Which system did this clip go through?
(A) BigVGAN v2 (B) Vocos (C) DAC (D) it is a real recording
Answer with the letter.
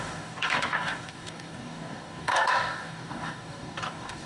C